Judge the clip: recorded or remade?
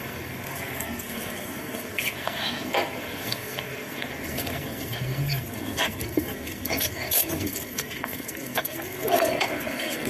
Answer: remade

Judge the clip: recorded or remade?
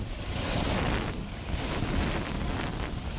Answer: recorded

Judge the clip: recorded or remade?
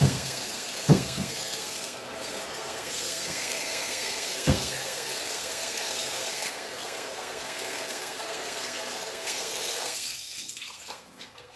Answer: remade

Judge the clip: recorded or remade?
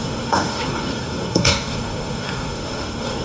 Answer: remade